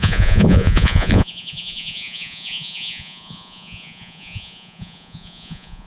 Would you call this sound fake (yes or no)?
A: yes